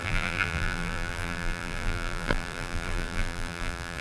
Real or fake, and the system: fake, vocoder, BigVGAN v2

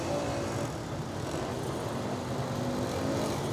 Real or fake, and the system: real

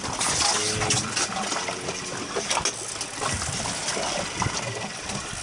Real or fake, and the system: real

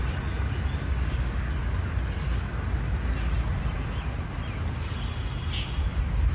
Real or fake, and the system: real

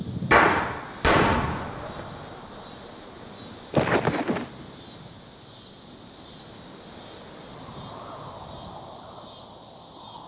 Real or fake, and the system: real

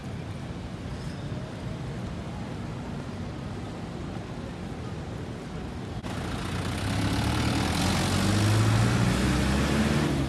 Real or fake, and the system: real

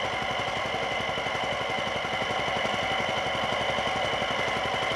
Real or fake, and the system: real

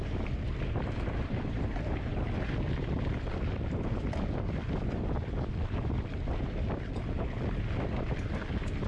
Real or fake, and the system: fake, vocoder, BigVGAN v2